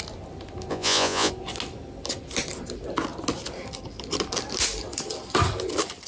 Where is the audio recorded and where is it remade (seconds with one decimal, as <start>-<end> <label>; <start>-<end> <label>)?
0.0-0.7 recorded; 0.7-1.3 remade; 1.3-6.1 recorded